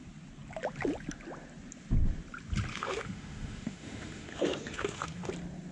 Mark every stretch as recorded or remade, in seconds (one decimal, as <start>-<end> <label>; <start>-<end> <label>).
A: 0.0-2.7 recorded; 2.7-5.3 remade; 5.3-5.7 recorded